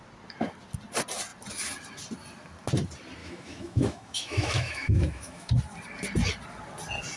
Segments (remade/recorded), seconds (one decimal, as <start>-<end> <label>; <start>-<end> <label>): 0.0-3.2 recorded; 3.2-5.6 remade; 5.6-7.2 recorded